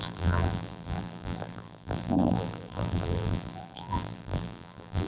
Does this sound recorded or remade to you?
remade